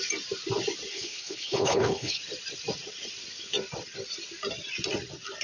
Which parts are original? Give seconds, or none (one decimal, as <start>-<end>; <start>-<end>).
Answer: 0.0-0.9; 2.2-5.4